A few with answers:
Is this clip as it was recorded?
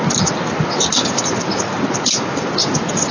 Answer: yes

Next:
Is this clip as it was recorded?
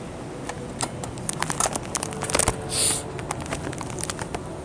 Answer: yes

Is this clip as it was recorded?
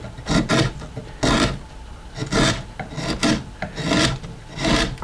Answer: yes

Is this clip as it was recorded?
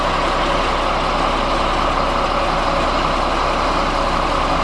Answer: yes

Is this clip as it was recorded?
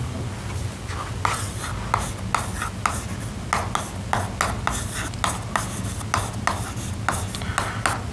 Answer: yes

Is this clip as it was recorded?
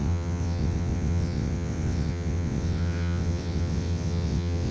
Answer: no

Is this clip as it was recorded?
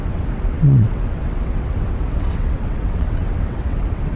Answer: no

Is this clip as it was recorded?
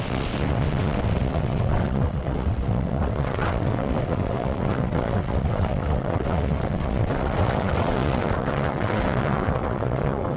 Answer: no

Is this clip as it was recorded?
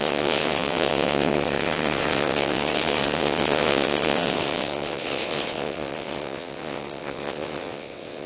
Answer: no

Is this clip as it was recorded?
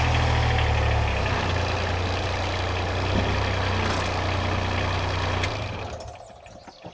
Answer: yes